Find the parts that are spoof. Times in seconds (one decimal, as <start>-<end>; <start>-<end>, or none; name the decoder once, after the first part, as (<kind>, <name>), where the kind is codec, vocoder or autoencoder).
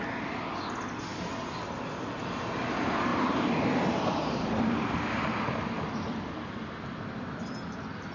3.1-6.5 (vocoder, BigVGAN v2)